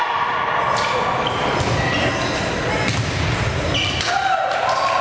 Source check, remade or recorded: recorded